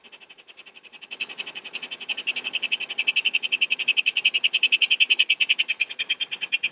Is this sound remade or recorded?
recorded